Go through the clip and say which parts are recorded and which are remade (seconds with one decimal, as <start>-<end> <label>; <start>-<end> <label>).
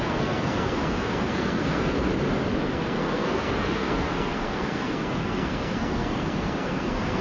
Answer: 0.0-2.1 remade; 2.1-2.6 recorded; 2.6-7.2 remade